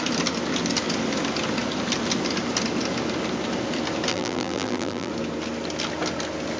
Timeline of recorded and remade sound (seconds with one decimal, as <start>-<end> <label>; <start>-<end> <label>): 0.0-4.1 recorded; 4.1-5.1 remade; 5.1-6.6 recorded